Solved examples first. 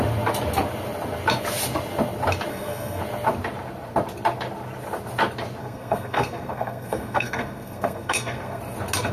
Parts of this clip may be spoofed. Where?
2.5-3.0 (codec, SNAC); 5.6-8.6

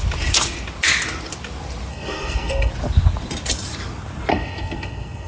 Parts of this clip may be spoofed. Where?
1.9-2.7 (codec, SNAC); 4.3-5.3

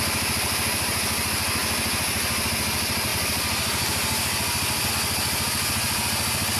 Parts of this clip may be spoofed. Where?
none

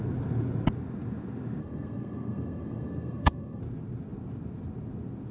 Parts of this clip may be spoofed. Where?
1.6-3.6 (codec, SNAC)

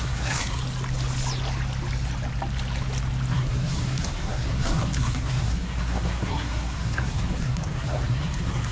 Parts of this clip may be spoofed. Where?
0.0-0.6 (codec, SNAC); 3.3-8.7

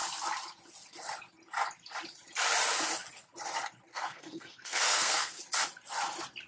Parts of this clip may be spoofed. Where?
3.9-5.4 (codec, SNAC)

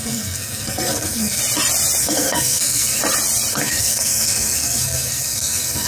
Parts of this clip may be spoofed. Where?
0.0-1.4 (codec, SNAC); 2.0-3.0; 3.5-5.9

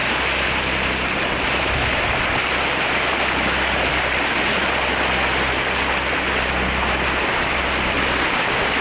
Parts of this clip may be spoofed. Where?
none